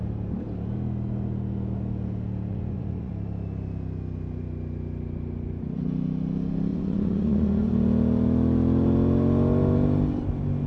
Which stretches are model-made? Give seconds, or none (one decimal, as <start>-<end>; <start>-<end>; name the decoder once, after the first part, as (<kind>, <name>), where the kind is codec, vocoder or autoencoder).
2.5-3.1 (vocoder, Vocos); 6.7-7.7